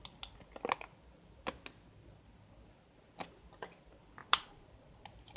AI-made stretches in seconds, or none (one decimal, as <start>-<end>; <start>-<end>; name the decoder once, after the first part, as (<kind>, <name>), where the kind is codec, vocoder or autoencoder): 4.2-5.4 (vocoder, BigVGAN v2)